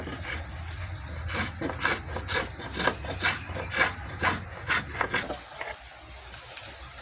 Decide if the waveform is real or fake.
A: real